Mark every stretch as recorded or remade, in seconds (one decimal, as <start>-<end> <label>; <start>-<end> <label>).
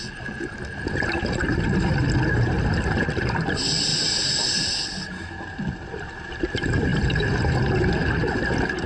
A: 0.0-6.9 recorded; 6.9-7.7 remade; 7.7-8.9 recorded